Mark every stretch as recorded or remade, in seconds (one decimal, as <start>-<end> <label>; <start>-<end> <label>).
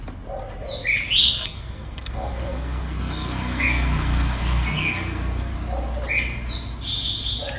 0.0-1.2 recorded; 1.2-5.5 remade; 5.5-7.6 recorded